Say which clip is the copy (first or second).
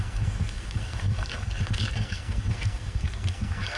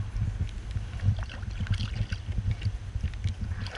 first